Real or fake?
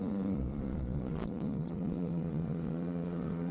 fake